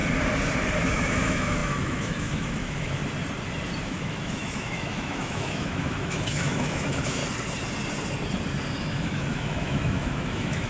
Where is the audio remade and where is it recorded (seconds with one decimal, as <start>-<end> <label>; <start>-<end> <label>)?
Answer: 0.0-0.8 recorded; 0.8-3.0 remade; 3.0-3.8 recorded; 3.8-7.2 remade; 7.2-8.8 recorded; 8.8-10.7 remade